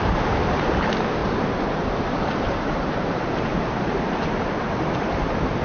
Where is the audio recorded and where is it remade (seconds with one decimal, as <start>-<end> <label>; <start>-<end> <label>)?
0.0-5.6 remade